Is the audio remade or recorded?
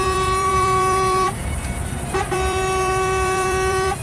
remade